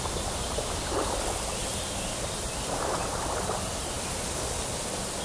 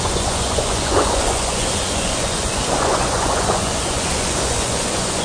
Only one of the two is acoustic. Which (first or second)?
first